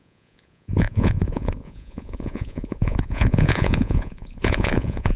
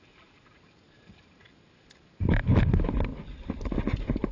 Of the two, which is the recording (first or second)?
second